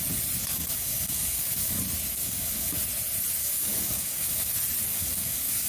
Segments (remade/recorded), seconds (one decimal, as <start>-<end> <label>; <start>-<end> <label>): 0.0-0.4 recorded; 0.4-1.8 remade; 1.8-2.2 recorded; 2.2-2.8 remade; 2.8-3.4 recorded; 3.4-4.5 remade; 4.5-4.9 recorded; 4.9-5.7 remade